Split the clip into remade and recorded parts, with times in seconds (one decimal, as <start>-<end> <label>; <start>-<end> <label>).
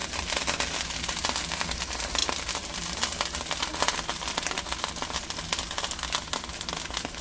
0.0-7.2 recorded